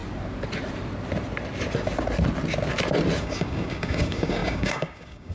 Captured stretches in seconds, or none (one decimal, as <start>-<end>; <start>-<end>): 0.0-3.2